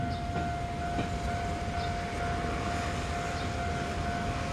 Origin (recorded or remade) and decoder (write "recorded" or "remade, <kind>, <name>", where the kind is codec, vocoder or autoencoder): recorded